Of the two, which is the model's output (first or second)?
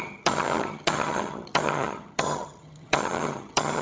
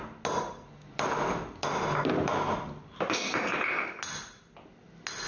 first